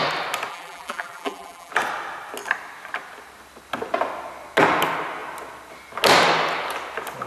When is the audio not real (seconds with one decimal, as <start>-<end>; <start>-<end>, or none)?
0.5-1.7